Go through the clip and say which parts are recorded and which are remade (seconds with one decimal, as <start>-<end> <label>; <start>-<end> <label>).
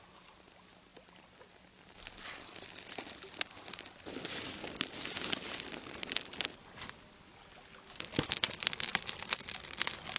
0.0-10.2 recorded